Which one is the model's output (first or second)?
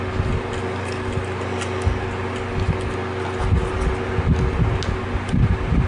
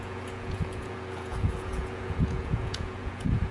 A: second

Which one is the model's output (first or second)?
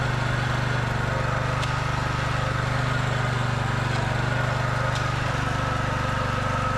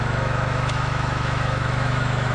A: second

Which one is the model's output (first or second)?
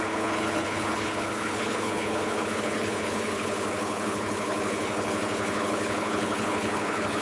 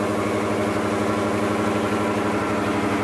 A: first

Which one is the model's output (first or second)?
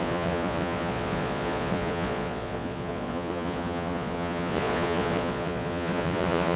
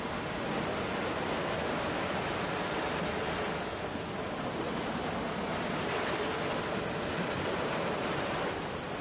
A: first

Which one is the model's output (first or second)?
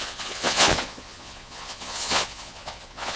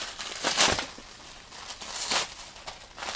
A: first